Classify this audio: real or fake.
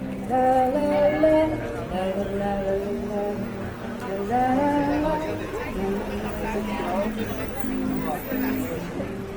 real